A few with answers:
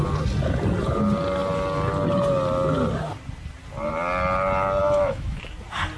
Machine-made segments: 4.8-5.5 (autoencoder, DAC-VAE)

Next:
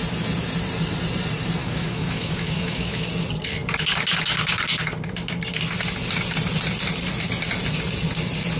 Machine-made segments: 1.6-3.1 (autoencoder, DAC-VAE)

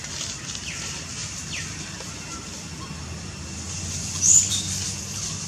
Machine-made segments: none